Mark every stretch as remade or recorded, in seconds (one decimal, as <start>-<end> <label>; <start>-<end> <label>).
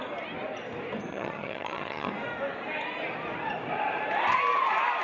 0.0-1.1 recorded; 1.1-2.1 remade; 2.1-5.0 recorded